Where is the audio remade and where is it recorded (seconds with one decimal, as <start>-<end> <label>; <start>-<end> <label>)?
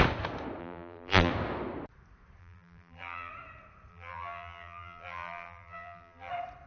0.0-0.6 recorded; 0.6-1.3 remade; 1.3-2.4 recorded; 2.4-3.3 remade; 3.3-3.9 recorded; 3.9-6.3 remade; 6.3-6.7 recorded